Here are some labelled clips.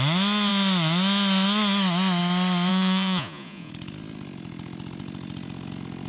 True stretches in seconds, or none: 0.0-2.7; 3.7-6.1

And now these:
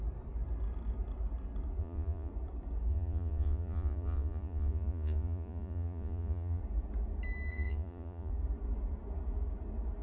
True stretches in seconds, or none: 0.0-1.8; 2.3-2.9; 6.6-7.5; 8.3-10.0

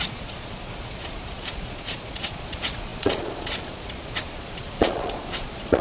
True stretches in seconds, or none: none

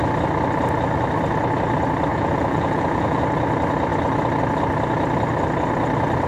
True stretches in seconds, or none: 0.0-2.1; 3.2-6.3

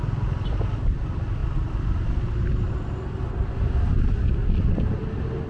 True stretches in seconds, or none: 0.0-5.5